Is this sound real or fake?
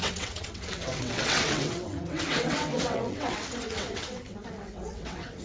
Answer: fake